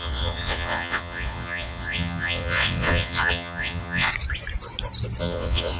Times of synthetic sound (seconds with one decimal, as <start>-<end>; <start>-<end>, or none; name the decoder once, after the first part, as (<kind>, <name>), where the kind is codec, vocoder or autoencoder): 0.0-4.1 (vocoder, WaveNeXt); 5.2-5.8